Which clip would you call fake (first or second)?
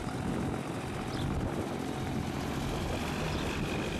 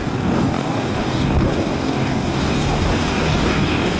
second